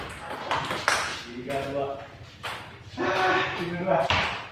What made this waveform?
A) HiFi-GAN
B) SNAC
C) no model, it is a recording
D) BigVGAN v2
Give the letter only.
D